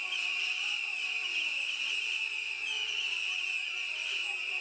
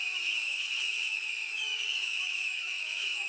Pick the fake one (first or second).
second